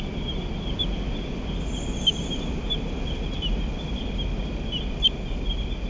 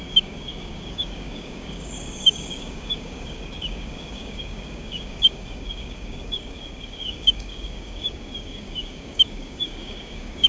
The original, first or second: first